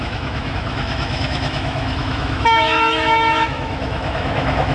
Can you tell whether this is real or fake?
fake